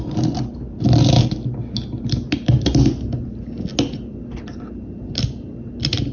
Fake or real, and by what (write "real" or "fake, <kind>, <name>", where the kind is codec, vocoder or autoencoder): real